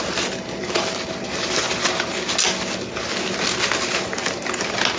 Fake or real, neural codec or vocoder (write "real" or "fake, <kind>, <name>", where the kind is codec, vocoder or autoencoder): real